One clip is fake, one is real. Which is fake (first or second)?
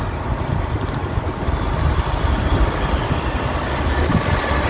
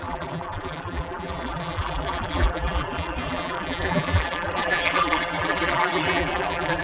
second